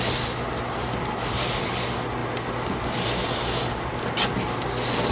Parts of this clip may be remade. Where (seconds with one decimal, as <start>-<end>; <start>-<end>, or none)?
none